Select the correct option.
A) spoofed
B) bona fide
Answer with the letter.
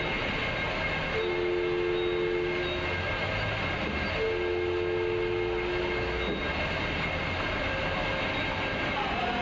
B